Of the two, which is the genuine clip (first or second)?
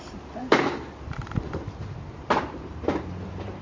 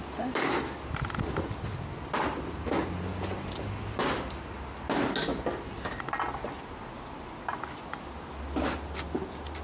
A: second